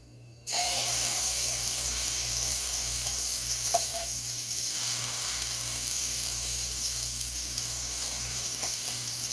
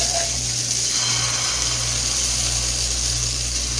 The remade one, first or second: first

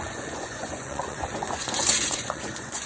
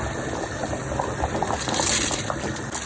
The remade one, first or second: first